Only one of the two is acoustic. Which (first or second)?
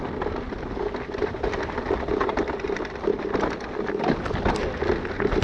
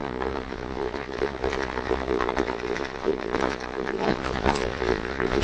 first